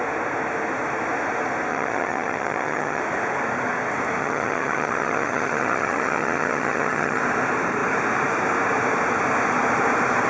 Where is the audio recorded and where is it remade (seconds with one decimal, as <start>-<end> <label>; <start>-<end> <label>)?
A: 0.0-1.7 recorded; 1.7-3.0 remade; 3.0-4.2 recorded; 4.2-7.2 remade; 7.2-10.3 recorded